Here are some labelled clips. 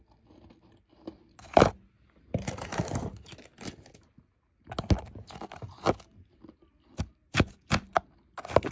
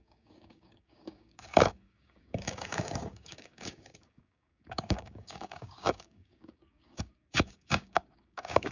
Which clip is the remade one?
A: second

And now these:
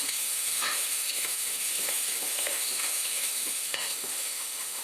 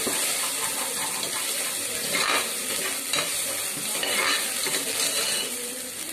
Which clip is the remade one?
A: first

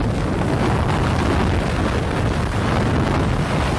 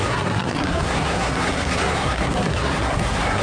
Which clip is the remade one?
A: second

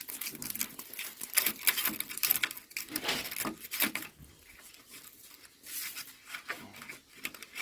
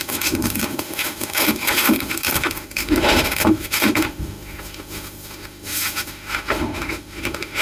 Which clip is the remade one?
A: second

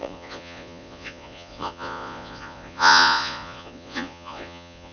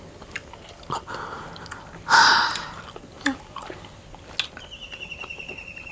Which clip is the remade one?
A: first